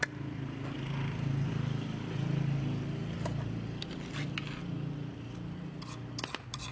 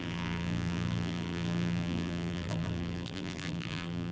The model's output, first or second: second